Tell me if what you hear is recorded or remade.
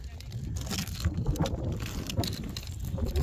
recorded